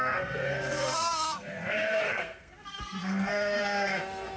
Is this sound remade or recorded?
remade